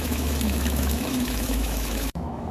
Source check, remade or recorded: remade